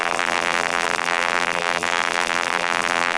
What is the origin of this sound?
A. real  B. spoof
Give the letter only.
B